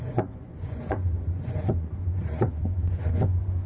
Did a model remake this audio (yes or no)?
yes